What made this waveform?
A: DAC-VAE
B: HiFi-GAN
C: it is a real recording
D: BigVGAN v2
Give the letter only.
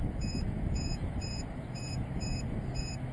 A